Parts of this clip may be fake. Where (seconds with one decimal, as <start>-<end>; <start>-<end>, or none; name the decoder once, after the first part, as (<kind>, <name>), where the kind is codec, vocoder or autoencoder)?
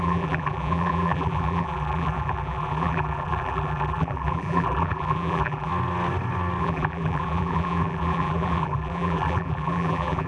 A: 0.0-5.7 (vocoder, BigVGAN v2); 6.6-10.3